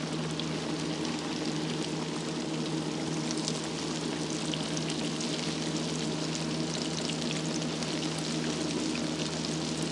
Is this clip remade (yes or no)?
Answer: no